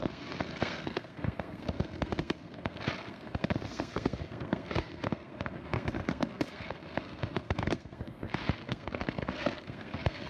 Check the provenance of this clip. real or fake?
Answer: fake